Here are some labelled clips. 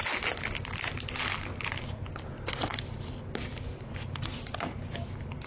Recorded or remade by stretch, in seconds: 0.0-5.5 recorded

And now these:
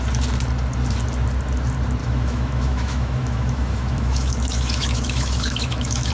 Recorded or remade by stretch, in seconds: 0.0-2.0 recorded; 2.0-6.1 remade

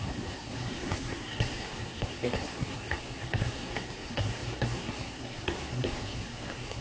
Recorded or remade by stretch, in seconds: 0.0-6.8 remade

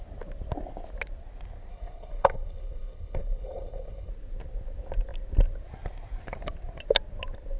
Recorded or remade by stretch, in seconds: 0.0-1.7 recorded; 1.7-4.1 remade; 4.1-7.6 recorded

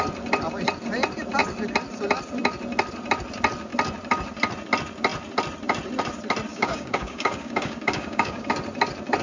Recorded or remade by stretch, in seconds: 0.0-6.5 recorded; 6.5-8.5 remade; 8.5-9.2 recorded

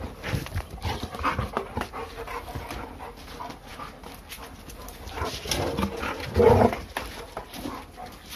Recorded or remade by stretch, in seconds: 0.0-8.4 recorded

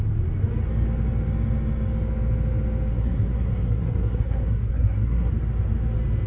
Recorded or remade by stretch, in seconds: 0.0-2.9 recorded; 2.9-5.3 remade; 5.3-6.3 recorded

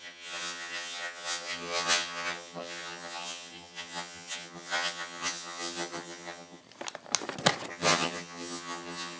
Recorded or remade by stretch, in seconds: 0.0-6.6 remade; 6.6-7.7 recorded; 7.7-9.2 remade